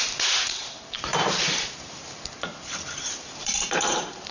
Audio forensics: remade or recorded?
remade